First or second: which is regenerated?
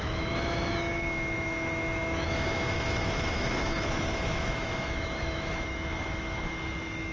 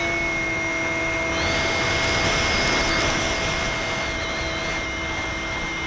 first